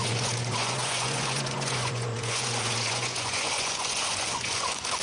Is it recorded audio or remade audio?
remade